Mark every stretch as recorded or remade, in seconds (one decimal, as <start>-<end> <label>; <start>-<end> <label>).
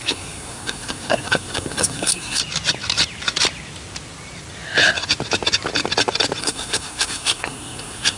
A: 0.0-2.4 remade; 2.4-6.4 recorded; 6.4-8.2 remade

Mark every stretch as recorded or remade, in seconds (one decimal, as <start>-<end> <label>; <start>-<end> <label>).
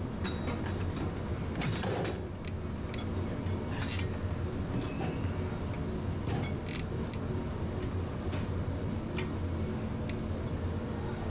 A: 0.0-1.3 recorded; 1.3-2.0 remade; 2.0-11.3 recorded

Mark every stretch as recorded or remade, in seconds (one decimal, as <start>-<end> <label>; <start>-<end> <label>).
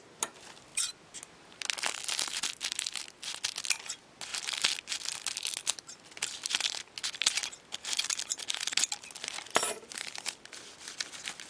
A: 0.0-11.5 recorded